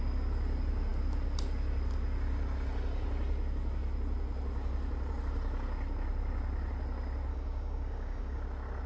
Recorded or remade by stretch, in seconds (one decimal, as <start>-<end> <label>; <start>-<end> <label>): 0.0-7.3 recorded; 7.3-8.4 remade; 8.4-8.9 recorded